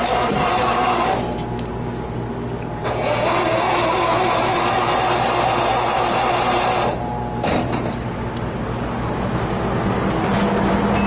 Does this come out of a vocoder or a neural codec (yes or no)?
no